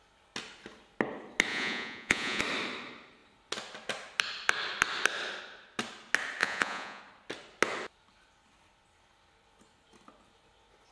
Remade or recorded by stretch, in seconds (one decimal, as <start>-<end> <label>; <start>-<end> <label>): 0.0-1.5 recorded; 1.5-2.4 remade; 2.4-6.4 recorded; 6.4-7.0 remade; 7.0-10.9 recorded